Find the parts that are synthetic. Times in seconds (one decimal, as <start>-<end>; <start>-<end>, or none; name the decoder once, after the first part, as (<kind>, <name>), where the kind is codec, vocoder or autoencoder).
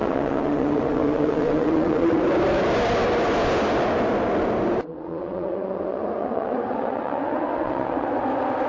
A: 0.0-2.2 (vocoder, WaveNeXt); 4.9-8.1